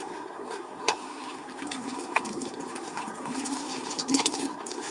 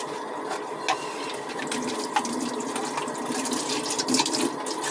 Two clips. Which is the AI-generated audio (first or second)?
first